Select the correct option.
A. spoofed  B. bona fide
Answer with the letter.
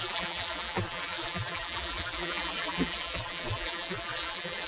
A